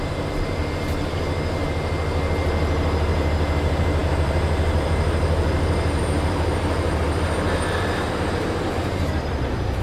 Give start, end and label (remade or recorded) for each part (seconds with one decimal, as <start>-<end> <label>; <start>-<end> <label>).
0.0-0.6 remade; 0.6-3.6 recorded; 3.6-9.8 remade